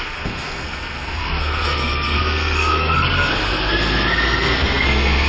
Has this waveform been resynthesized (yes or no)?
yes